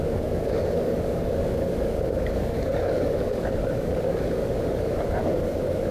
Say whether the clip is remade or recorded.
remade